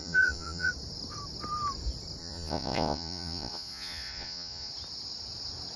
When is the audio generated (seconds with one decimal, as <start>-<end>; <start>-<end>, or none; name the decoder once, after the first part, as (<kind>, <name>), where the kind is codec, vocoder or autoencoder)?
0.0-0.7 (vocoder, Vocos); 2.2-4.7